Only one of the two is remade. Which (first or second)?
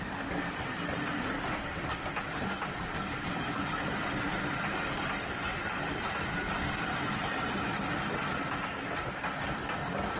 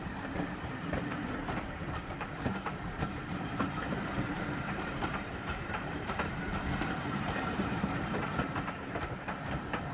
second